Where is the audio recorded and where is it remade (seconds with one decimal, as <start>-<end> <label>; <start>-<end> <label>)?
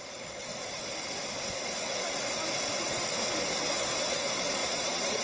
0.0-0.5 remade; 0.5-3.6 recorded; 3.6-5.2 remade